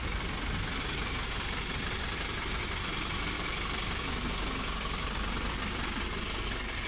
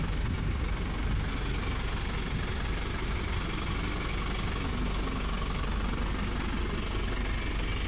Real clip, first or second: second